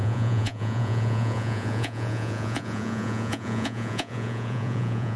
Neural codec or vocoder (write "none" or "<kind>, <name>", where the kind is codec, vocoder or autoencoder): vocoder, Vocos